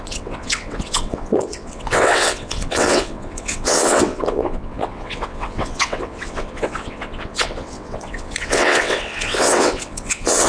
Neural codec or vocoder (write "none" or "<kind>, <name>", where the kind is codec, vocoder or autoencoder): vocoder, WaveNeXt